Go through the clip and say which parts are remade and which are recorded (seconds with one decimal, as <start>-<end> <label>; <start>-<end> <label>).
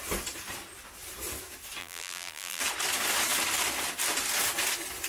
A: 0.0-1.8 recorded; 1.8-2.6 remade; 2.6-5.1 recorded